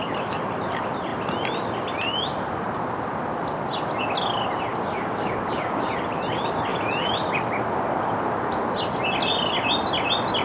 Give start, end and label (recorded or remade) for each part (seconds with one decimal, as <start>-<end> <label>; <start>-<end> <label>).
0.0-4.7 recorded; 4.7-5.9 remade; 5.9-10.4 recorded